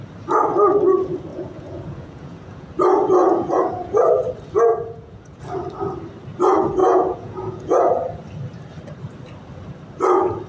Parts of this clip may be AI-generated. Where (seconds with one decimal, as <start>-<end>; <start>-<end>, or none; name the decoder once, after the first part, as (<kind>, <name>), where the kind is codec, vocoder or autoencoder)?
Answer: 1.3-2.7 (vocoder, Vocos); 3.2-4.0; 4.7-5.4; 6.8-8.2